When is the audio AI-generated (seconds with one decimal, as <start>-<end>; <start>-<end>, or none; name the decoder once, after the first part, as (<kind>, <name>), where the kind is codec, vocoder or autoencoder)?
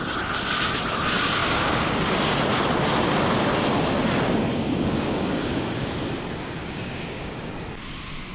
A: 1.4-2.1 (codec, DAC); 4.5-5.9; 6.6-7.5